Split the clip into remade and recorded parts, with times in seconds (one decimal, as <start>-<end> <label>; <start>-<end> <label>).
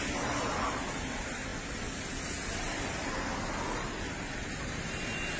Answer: 0.0-5.4 recorded